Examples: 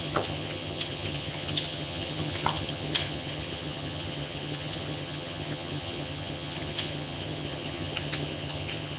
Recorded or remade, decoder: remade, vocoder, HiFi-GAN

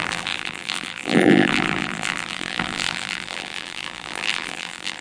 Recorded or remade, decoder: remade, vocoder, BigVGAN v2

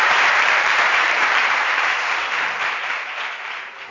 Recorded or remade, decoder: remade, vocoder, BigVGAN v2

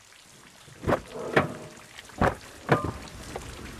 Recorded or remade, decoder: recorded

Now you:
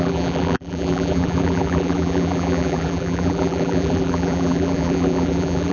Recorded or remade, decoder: remade, vocoder, BigVGAN v2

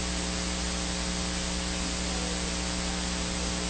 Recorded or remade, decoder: recorded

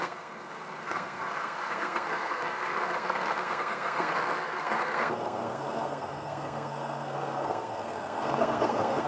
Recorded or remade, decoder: remade, codec, SNAC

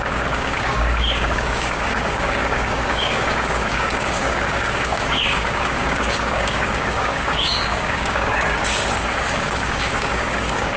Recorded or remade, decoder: remade, codec, DAC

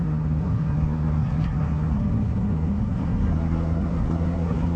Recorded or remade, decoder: remade, codec, SNAC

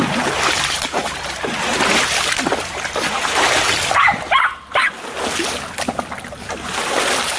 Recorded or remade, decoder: recorded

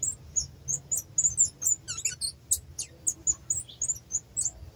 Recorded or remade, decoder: recorded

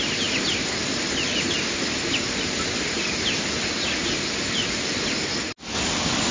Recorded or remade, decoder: recorded